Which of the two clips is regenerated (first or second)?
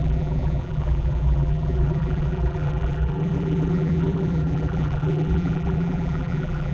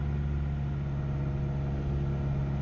first